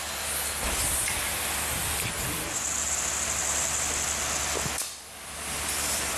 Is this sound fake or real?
real